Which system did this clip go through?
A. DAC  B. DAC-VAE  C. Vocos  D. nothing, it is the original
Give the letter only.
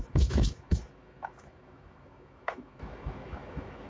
B